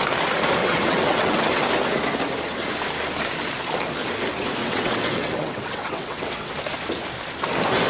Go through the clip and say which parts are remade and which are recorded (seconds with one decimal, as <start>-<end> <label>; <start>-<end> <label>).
0.0-0.6 recorded; 0.6-1.6 remade; 1.6-4.6 recorded; 4.6-6.5 remade; 6.5-7.9 recorded